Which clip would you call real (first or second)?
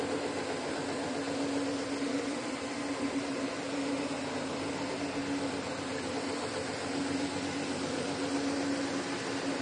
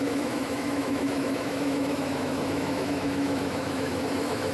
first